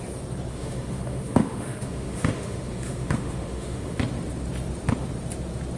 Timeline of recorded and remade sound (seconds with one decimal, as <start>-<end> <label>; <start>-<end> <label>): 0.0-0.5 recorded; 0.5-4.0 remade; 4.0-5.8 recorded